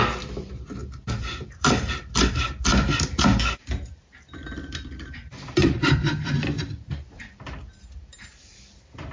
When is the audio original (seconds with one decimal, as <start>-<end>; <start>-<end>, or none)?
0.0-0.8; 1.9-2.7; 6.7-9.1